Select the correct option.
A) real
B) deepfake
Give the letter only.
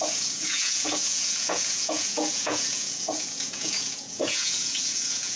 B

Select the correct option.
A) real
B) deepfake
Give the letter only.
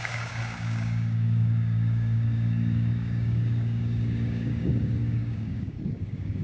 B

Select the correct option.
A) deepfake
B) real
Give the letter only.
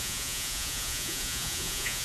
A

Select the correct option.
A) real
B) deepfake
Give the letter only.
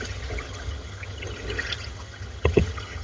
B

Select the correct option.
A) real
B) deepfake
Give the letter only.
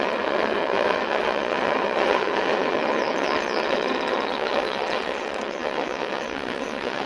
B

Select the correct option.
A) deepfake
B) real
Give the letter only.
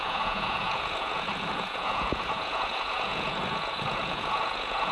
A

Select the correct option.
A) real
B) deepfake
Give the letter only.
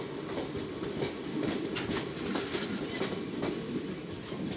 A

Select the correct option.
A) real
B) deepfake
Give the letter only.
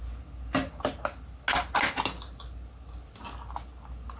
A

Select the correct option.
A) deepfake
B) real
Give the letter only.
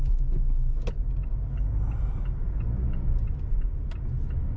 B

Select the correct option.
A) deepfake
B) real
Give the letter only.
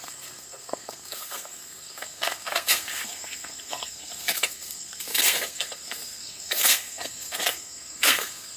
A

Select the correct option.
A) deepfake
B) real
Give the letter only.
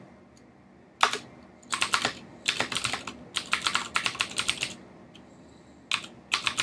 B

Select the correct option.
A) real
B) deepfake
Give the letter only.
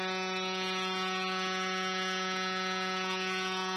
A